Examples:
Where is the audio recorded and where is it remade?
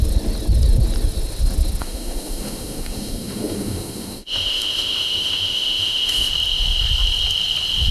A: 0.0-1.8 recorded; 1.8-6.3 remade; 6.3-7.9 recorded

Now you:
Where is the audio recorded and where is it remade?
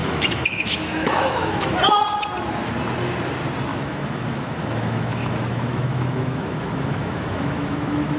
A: 0.0-1.8 remade; 1.8-3.7 recorded; 3.7-8.2 remade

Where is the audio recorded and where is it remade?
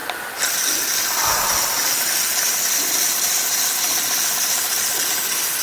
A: 0.0-5.6 recorded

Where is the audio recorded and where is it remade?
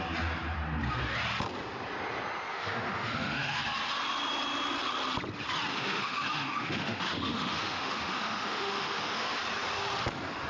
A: 0.0-2.5 recorded; 2.5-3.6 remade; 3.6-5.7 recorded; 5.7-9.4 remade; 9.4-10.5 recorded